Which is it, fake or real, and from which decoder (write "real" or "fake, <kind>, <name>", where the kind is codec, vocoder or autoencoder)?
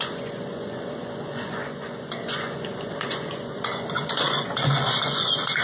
fake, vocoder, Vocos